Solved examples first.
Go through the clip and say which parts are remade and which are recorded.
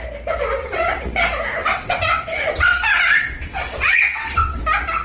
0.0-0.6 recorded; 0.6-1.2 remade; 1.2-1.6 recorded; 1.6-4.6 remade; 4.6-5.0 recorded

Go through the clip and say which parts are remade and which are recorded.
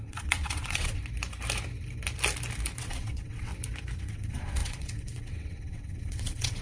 0.0-1.0 remade; 1.0-2.8 recorded; 2.8-3.5 remade; 3.5-4.0 recorded; 4.0-6.6 remade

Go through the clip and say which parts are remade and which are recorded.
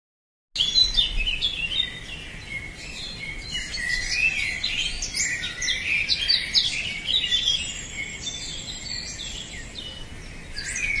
0.0-11.0 recorded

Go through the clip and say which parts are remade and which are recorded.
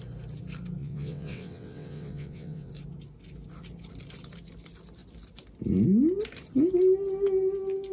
0.0-0.8 recorded; 0.8-2.7 remade; 2.7-7.9 recorded